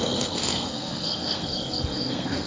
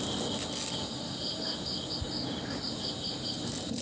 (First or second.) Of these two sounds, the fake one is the first